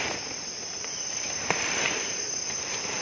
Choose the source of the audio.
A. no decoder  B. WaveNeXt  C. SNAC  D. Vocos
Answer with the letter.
A